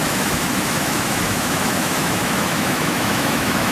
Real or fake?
fake